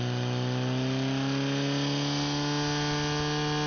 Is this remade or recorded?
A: recorded